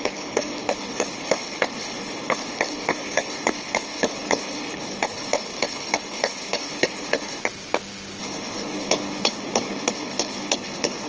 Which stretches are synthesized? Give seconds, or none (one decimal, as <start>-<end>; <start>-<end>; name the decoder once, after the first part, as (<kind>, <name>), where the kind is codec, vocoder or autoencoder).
0.0-7.4 (codec, HILCodec); 8.2-11.1